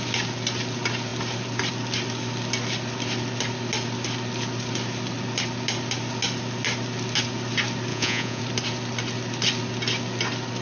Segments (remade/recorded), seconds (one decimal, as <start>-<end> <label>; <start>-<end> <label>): 0.0-7.9 recorded; 7.9-8.4 remade; 8.4-10.6 recorded